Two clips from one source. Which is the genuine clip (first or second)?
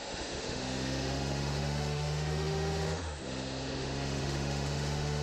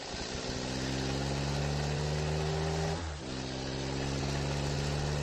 second